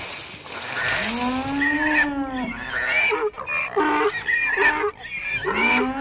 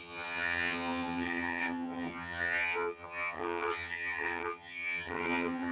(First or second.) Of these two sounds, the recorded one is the first